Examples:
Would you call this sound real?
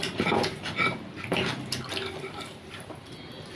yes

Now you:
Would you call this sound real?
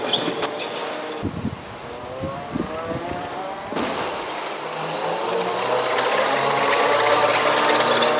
yes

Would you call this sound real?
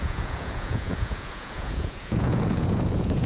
no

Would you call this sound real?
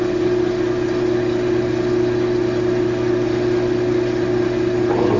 yes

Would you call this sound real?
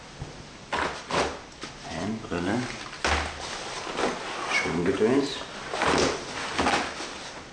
yes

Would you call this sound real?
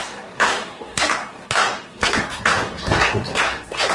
no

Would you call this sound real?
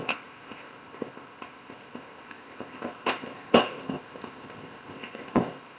no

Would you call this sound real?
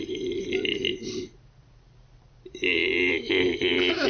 no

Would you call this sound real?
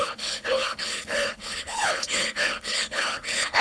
no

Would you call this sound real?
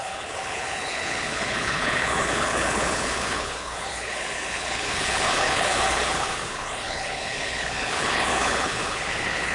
no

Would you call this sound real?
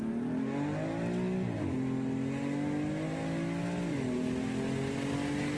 yes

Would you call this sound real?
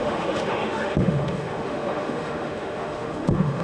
no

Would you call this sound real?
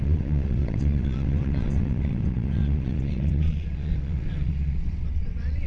no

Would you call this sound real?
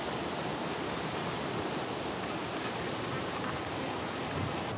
yes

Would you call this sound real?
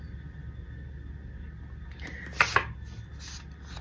yes